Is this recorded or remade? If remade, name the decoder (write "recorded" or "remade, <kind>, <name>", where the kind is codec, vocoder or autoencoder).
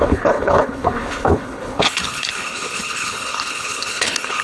remade, codec, HILCodec